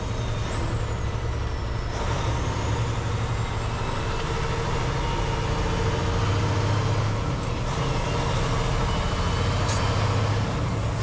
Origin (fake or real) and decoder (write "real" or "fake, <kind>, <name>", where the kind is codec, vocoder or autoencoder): real